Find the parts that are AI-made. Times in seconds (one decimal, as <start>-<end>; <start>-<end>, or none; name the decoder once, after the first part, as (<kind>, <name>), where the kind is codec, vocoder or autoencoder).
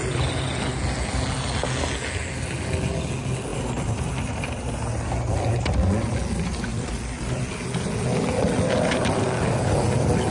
6.7-7.4 (vocoder, BigVGAN v2)